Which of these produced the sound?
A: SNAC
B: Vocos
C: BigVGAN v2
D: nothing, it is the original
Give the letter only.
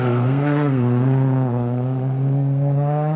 A